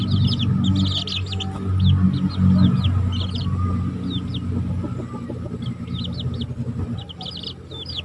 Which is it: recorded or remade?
recorded